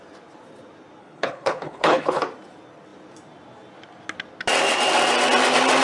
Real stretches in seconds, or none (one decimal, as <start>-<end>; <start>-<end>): 0.0-1.0; 2.2-5.8

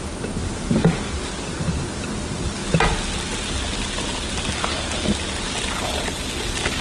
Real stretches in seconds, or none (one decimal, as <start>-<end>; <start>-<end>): 0.0-6.8

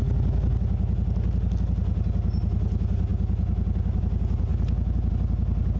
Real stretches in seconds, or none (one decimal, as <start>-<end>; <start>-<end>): 0.0-5.8

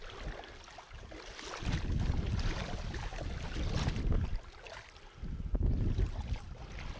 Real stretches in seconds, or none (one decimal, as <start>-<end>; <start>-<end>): 0.0-7.0

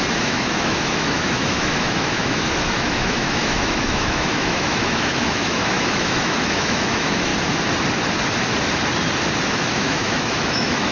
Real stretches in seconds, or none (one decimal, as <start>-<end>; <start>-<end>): 7.3-9.5

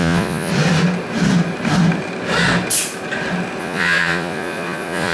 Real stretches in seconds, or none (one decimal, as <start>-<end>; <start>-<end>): 0.5-3.6

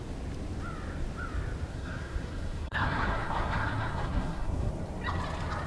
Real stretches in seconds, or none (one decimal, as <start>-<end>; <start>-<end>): 0.0-1.7; 4.7-5.7